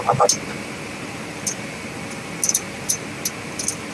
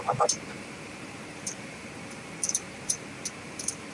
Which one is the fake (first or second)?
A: second